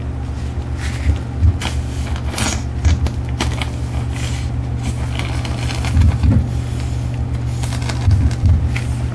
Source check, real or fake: real